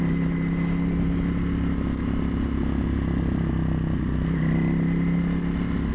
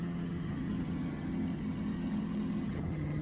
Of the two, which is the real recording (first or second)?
first